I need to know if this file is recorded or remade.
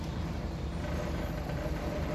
remade